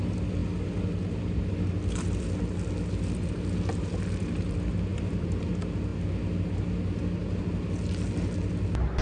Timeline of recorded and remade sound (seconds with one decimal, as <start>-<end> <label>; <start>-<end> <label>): 0.0-4.9 recorded; 4.9-5.5 remade; 5.5-9.0 recorded